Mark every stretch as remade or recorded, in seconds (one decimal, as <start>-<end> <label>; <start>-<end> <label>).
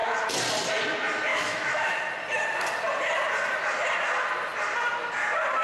0.0-1.3 recorded; 1.3-2.0 remade; 2.0-5.6 recorded